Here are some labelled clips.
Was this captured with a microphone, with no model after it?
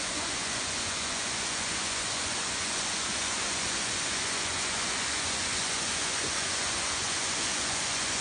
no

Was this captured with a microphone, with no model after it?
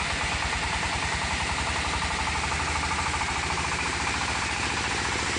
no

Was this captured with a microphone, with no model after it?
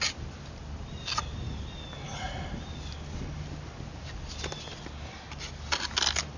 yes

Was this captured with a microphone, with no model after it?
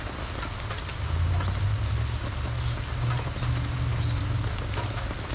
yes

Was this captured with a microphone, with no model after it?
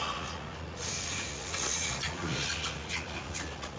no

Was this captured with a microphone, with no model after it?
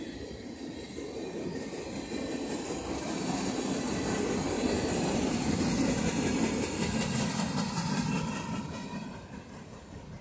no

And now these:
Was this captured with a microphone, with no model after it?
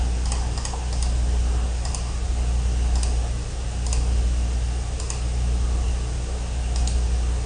yes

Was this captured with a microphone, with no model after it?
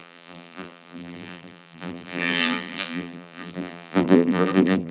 no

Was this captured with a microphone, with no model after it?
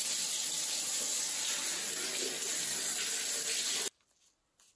yes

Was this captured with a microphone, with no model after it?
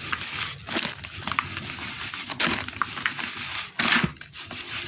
yes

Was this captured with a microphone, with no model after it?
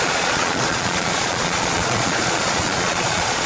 no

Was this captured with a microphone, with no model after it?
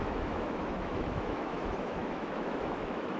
no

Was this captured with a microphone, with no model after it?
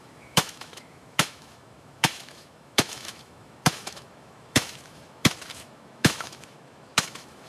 no